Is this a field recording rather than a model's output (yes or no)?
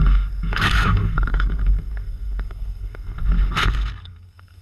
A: no